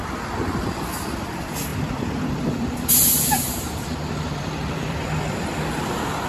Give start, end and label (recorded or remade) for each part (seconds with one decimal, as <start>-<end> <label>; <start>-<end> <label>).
0.0-6.3 remade